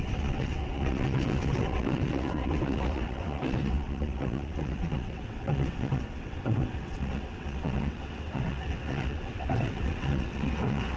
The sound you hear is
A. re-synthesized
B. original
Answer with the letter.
A